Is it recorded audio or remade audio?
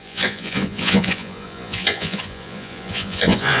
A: remade